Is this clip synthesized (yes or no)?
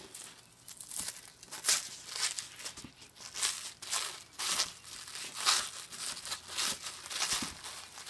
no